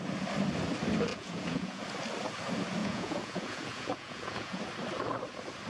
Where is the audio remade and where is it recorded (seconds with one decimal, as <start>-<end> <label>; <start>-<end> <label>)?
0.0-1.1 recorded; 1.1-1.8 remade; 1.8-2.8 recorded; 2.8-4.6 remade; 4.6-5.7 recorded